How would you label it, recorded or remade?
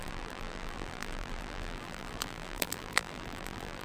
remade